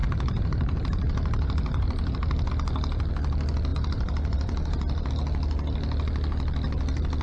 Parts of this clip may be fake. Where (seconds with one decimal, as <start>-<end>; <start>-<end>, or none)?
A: 0.0-2.5; 3.7-5.1

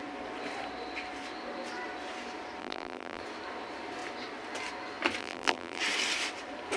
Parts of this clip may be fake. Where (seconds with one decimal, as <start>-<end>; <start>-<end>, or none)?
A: 2.6-3.2; 5.2-5.8

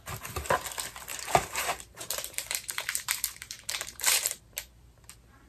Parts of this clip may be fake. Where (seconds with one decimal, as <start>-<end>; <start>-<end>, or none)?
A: 1.1-4.4

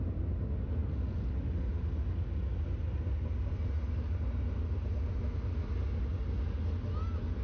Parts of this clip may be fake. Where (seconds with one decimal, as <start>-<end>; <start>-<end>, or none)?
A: none

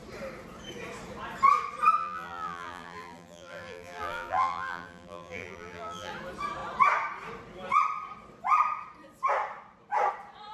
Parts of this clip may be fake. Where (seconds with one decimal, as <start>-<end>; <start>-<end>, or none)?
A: 2.0-6.1

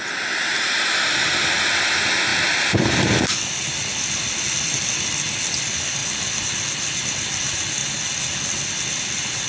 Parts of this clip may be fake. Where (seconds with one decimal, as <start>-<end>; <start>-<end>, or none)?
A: none